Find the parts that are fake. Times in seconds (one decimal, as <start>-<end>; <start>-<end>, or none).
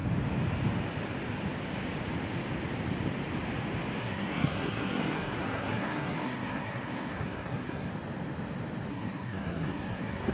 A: 4.0-7.9; 8.9-10.3